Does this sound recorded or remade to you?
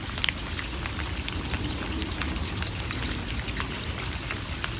recorded